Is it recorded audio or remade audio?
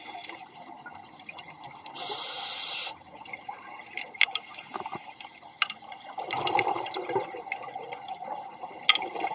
recorded